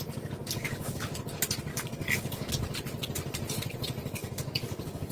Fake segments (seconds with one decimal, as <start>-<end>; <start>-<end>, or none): 0.4-1.1; 1.7-2.5; 4.2-5.1